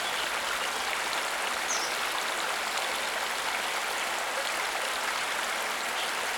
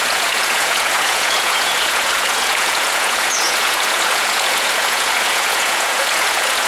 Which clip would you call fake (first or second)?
second